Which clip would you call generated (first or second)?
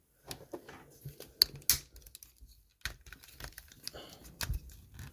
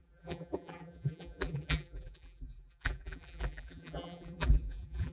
second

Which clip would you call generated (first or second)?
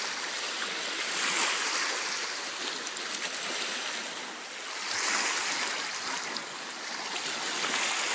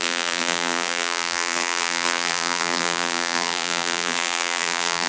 second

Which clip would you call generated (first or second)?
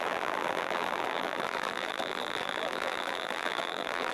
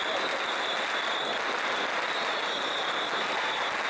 first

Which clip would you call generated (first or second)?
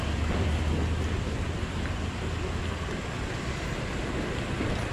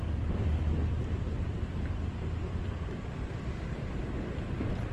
second